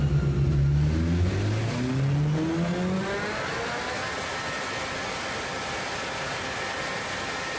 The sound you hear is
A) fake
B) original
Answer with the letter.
B